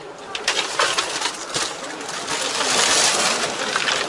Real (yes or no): yes